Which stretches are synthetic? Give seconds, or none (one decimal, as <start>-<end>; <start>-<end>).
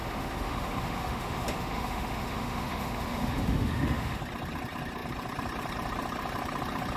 0.0-4.2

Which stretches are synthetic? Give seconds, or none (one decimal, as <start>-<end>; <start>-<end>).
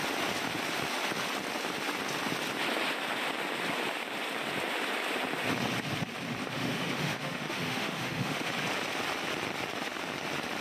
6.4-8.5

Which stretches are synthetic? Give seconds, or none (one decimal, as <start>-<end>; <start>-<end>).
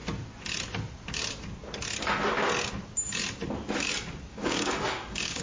4.3-5.4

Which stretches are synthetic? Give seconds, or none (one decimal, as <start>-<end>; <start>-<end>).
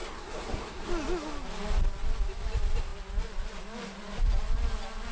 0.0-0.9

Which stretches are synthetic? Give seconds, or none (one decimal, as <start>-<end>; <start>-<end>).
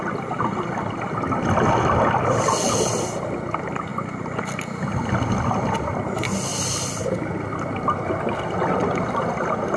none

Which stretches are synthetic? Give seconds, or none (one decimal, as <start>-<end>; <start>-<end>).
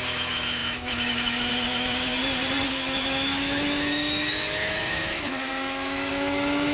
0.0-2.2; 2.7-6.7